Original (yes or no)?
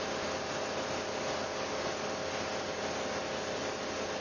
yes